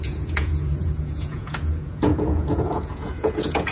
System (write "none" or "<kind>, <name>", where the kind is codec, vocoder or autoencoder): vocoder, Vocos